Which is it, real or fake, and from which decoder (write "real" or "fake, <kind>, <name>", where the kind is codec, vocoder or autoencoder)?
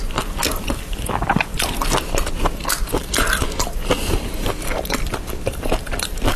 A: real